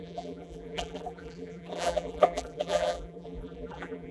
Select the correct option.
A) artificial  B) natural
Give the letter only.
A